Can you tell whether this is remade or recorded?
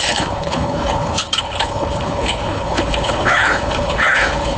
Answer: remade